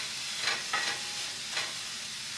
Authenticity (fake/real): real